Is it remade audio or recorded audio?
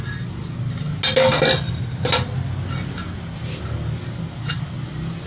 recorded